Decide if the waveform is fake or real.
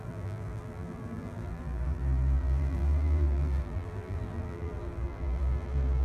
fake